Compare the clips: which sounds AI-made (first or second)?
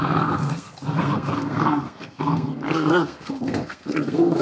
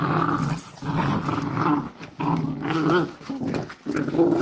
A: first